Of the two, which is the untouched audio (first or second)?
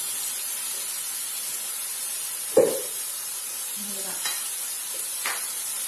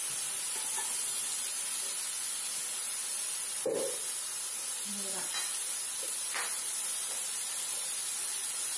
second